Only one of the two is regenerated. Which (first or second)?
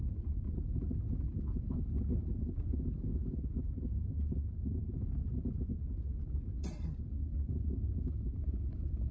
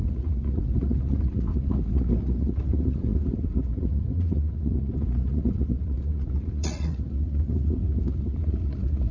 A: second